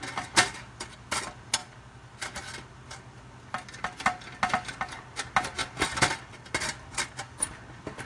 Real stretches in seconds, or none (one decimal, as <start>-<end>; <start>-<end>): 0.0-8.1